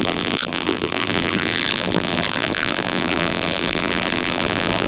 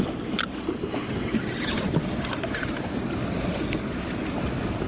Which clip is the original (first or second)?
second